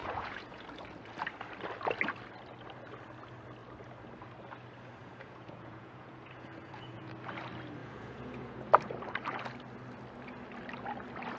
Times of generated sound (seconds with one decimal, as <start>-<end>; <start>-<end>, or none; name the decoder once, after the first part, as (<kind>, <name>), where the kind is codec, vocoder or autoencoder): 0.0-0.6 (vocoder, Vocos); 5.0-7.1; 7.8-8.7